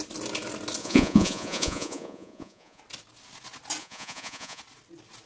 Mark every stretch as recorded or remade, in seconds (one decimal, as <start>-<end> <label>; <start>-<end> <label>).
0.0-0.8 recorded; 0.8-2.8 remade; 2.8-3.8 recorded; 3.8-4.6 remade; 4.6-5.3 recorded